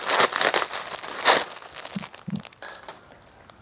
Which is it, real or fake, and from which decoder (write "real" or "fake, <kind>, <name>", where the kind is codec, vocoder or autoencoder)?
real